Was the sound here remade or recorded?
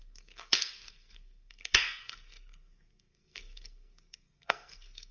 remade